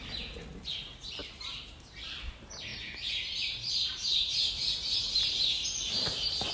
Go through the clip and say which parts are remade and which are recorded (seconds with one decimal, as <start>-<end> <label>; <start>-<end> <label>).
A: 0.0-1.2 recorded; 1.2-1.9 remade; 1.9-2.7 recorded; 2.7-6.5 remade